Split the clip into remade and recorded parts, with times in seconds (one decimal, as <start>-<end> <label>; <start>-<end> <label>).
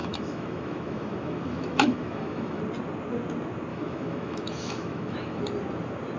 0.0-2.6 remade; 2.6-3.7 recorded; 3.7-5.4 remade; 5.4-6.2 recorded